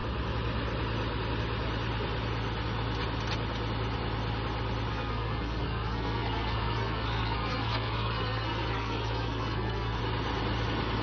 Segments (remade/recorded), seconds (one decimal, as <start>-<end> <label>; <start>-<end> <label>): 0.0-4.9 recorded; 4.9-10.0 remade; 10.0-11.0 recorded